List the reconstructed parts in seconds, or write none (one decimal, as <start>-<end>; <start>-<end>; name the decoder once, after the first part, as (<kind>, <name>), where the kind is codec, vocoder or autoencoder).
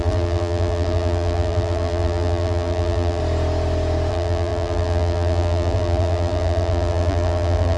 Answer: 0.0-3.2 (vocoder, BigVGAN v2); 4.1-7.8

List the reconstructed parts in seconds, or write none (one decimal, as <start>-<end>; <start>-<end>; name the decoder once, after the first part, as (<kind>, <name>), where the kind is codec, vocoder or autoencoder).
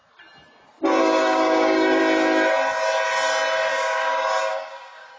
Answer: 1.0-2.0 (codec, DAC); 3.7-5.2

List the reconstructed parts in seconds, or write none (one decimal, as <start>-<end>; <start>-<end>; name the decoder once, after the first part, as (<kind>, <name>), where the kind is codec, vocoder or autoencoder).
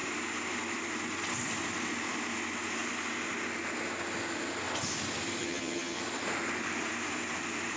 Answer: 5.4-6.0 (vocoder, HiFi-GAN)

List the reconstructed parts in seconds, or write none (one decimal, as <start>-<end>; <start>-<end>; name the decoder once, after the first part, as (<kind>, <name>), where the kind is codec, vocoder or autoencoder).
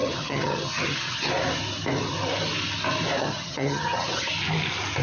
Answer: 0.0-1.3 (vocoder, HiFi-GAN); 3.2-4.3